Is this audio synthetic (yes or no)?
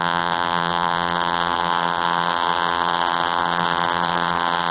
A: yes